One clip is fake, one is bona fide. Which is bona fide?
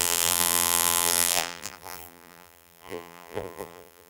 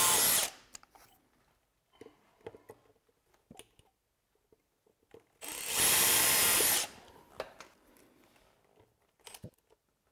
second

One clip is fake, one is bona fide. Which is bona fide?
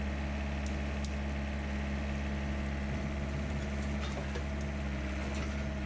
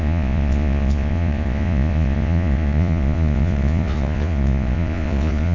first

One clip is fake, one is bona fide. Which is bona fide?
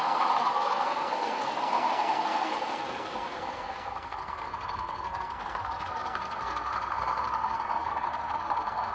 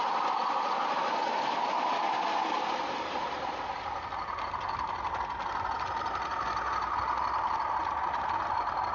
second